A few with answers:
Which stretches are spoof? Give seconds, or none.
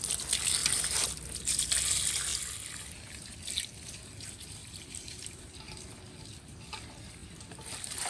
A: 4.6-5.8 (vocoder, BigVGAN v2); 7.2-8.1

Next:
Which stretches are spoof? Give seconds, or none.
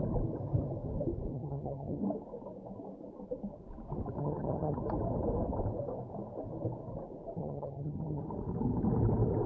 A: 1.3-2.0 (vocoder, HiFi-GAN); 4.2-4.8; 7.4-8.2